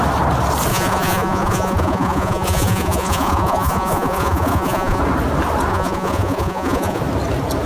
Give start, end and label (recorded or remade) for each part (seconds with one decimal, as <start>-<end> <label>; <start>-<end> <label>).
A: 0.0-0.7 recorded; 0.7-5.0 remade; 5.0-5.7 recorded; 5.7-7.0 remade; 7.0-7.7 recorded